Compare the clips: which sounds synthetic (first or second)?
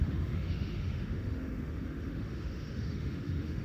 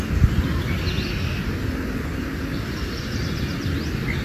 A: first